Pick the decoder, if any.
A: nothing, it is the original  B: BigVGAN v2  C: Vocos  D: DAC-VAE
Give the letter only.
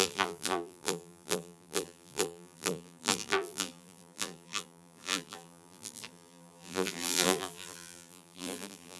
B